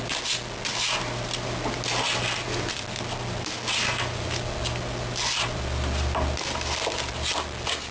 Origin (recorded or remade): recorded